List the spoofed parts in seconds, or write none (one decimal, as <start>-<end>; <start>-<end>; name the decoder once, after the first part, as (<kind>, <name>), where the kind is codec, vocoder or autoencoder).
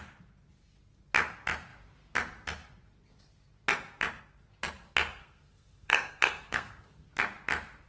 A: 5.2-7.1 (codec, SNAC)